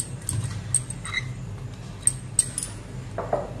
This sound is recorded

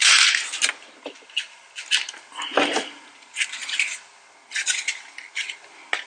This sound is recorded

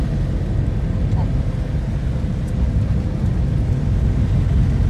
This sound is recorded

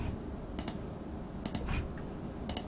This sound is recorded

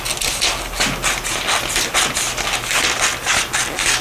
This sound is recorded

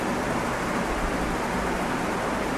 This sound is recorded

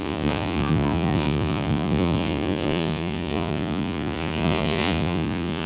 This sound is remade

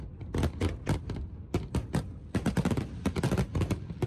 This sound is recorded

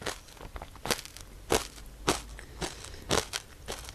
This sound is recorded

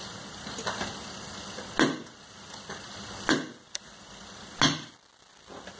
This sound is recorded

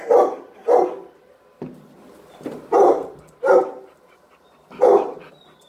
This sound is recorded